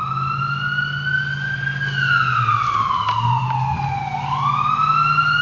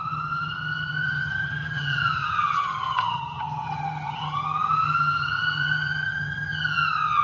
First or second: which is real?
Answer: first